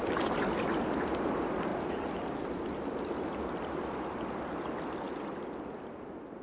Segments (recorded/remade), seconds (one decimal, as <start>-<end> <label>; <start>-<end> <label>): 0.0-6.4 recorded